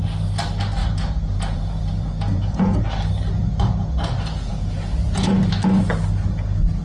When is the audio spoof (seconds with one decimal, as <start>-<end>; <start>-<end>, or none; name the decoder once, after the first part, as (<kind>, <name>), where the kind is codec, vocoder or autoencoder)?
0.8-2.8 (vocoder, Vocos); 4.5-5.3